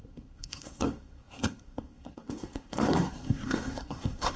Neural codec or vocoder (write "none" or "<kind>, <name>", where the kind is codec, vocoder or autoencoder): codec, SNAC